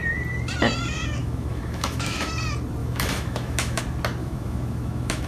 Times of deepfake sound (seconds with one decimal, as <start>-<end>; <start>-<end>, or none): 1.2-2.3; 2.8-3.8; 4.2-5.3